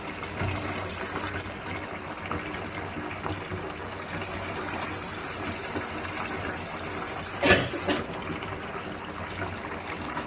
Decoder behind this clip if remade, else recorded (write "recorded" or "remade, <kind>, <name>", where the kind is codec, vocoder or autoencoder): recorded